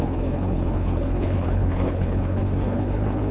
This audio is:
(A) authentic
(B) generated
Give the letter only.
B